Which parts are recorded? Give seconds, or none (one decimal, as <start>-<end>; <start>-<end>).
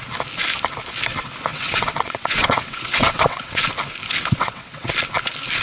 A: 0.0-1.5; 3.6-4.2; 4.9-5.6